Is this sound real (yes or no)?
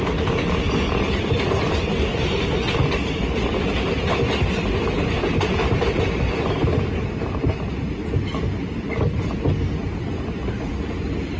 yes